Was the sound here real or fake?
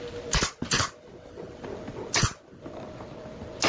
real